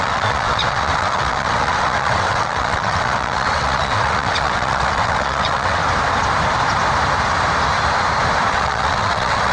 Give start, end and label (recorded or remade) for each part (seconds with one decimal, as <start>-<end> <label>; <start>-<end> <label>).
0.0-5.8 remade; 5.8-8.5 recorded; 8.5-9.5 remade